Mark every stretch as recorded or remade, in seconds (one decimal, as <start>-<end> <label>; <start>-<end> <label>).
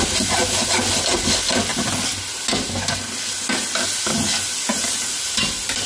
0.0-5.9 recorded